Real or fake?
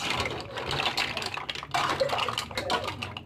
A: real